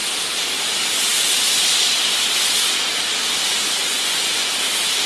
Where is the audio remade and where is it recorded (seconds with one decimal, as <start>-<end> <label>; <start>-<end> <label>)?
0.0-3.8 recorded; 3.8-4.5 remade; 4.5-5.1 recorded

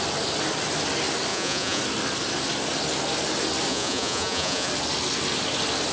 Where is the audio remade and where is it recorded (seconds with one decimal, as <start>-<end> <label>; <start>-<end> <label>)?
0.0-1.3 recorded; 1.3-1.8 remade; 1.8-3.7 recorded; 3.7-4.7 remade; 4.7-5.9 recorded

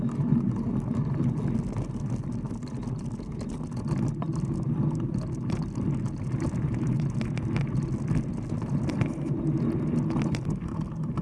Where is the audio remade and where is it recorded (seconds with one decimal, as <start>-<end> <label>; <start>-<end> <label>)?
0.0-11.2 recorded

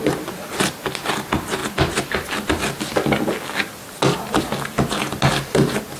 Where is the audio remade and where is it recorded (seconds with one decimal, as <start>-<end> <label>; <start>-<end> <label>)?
0.0-6.0 recorded

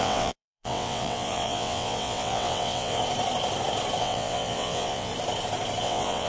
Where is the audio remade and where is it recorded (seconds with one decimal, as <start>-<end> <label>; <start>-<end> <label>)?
0.0-3.0 remade; 3.0-4.0 recorded; 4.0-5.1 remade; 5.1-5.8 recorded; 5.8-6.3 remade

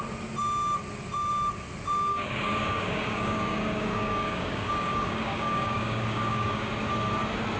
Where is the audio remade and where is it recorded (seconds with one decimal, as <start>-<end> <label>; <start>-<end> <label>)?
0.0-2.1 recorded; 2.1-6.7 remade; 6.7-7.6 recorded

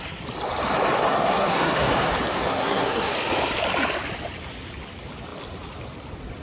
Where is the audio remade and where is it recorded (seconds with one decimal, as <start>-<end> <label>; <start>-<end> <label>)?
0.0-1.1 recorded; 1.1-1.9 remade; 1.9-2.5 recorded; 2.5-3.1 remade; 3.1-6.4 recorded

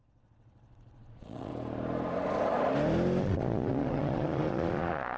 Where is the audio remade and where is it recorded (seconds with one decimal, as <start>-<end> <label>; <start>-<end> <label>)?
0.0-1.5 remade; 1.5-3.2 recorded; 3.2-5.2 remade